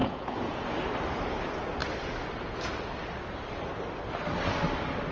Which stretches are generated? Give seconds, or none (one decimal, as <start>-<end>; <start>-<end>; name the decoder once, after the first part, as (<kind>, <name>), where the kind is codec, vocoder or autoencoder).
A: 0.0-0.7 (vocoder, Vocos)